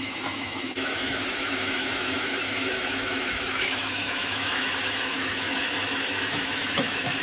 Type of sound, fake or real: fake